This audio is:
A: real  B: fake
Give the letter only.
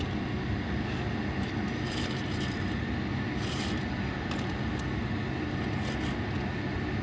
A